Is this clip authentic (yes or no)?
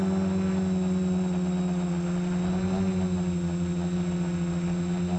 yes